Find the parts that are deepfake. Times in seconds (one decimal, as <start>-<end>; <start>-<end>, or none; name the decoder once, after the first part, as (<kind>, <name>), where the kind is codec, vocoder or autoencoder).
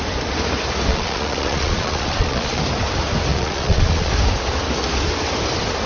0.9-2.6 (vocoder, Vocos); 3.3-4.1